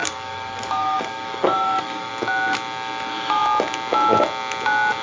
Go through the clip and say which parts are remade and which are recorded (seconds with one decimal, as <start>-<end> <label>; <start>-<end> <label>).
0.0-2.1 remade; 2.1-5.0 recorded